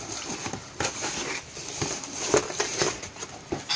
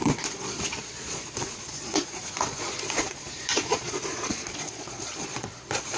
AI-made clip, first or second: second